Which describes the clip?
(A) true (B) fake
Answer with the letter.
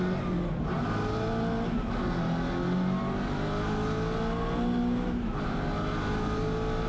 A